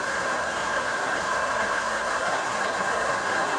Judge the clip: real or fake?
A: fake